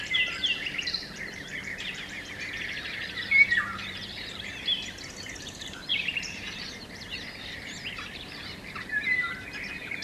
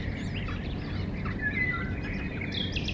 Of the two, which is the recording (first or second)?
second